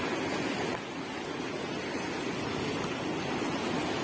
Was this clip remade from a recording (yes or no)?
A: no